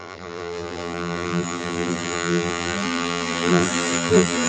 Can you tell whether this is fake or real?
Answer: fake